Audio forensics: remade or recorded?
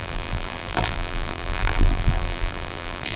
remade